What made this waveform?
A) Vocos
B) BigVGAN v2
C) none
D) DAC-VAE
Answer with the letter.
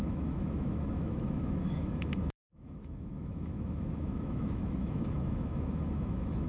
D